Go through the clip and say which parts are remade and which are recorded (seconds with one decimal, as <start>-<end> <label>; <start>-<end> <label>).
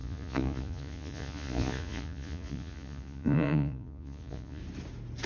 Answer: 0.0-4.6 remade; 4.6-5.3 recorded